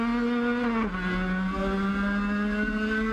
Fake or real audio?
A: real